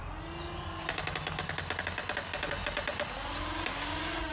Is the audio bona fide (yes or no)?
yes